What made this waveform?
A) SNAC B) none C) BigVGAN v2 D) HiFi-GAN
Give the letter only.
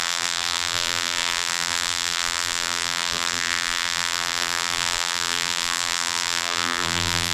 C